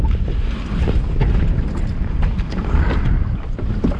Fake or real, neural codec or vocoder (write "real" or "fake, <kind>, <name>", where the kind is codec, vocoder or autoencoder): real